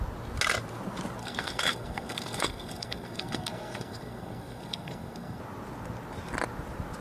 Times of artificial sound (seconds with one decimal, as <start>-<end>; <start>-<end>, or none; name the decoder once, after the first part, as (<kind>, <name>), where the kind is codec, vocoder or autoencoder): 1.2-5.4 (codec, SNAC)